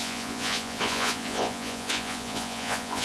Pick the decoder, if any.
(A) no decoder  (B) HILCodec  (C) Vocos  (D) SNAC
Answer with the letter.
C